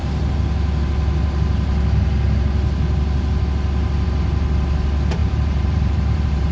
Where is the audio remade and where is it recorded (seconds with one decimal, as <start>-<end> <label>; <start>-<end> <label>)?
0.0-5.2 recorded; 5.2-6.5 remade